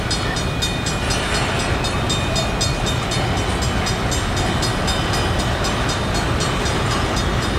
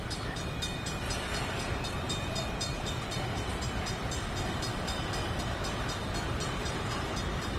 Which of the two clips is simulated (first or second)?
second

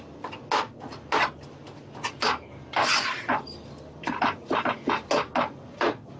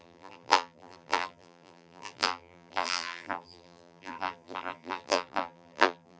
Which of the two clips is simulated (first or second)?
second